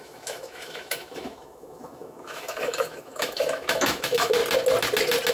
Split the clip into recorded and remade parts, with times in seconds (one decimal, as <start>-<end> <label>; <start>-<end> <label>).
0.0-4.4 remade; 4.4-5.3 recorded